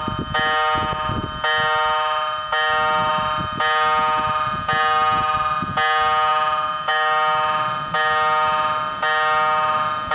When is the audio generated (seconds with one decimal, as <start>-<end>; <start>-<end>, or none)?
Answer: none